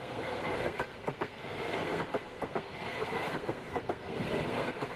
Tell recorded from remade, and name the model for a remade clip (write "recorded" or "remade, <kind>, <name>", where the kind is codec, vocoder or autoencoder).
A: remade, codec, SNAC